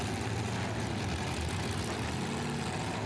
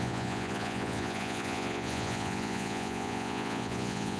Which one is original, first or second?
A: first